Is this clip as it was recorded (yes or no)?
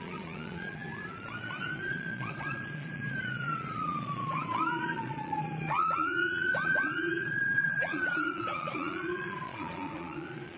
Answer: no